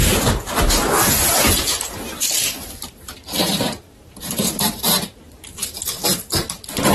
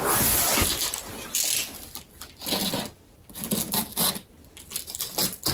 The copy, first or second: first